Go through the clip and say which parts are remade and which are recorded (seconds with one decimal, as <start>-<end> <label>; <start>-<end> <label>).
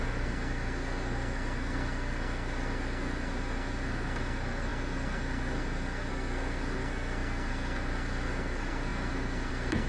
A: 0.0-9.9 remade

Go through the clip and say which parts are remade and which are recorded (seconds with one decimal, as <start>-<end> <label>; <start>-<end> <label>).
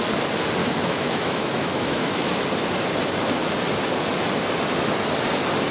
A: 0.0-0.6 recorded; 0.6-2.4 remade; 2.4-5.7 recorded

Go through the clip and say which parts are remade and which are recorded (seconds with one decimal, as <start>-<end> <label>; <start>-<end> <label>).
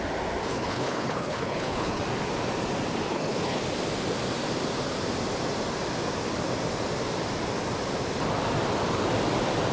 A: 0.0-0.5 recorded; 0.5-2.0 remade; 2.0-3.1 recorded; 3.1-3.6 remade; 3.6-9.7 recorded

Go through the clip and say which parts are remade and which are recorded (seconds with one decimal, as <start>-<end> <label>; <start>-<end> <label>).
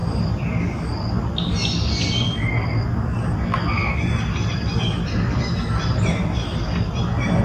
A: 0.0-7.4 recorded